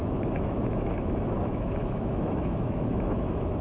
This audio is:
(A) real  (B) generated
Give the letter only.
B